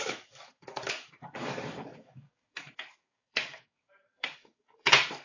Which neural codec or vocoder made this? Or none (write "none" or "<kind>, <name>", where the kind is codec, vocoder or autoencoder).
codec, DAC